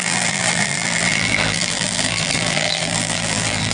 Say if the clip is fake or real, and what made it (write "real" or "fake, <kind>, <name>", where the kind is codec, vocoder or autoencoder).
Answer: fake, vocoder, BigVGAN v2